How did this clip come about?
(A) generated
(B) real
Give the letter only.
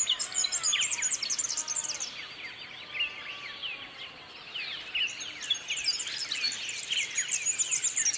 B